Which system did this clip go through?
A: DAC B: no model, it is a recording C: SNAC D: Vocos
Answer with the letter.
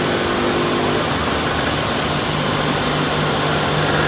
B